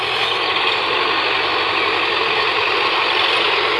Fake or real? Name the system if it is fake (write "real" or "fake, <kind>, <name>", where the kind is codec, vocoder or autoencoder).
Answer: real